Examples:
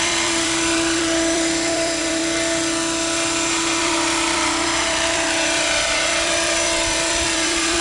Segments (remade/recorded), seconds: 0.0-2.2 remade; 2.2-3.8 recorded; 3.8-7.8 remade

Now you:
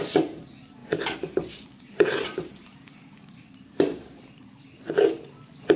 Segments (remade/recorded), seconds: 0.0-0.8 recorded; 0.8-4.3 remade; 4.3-5.8 recorded

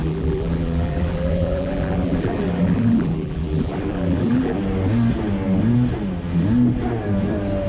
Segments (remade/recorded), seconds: 0.0-4.6 remade; 4.6-7.7 recorded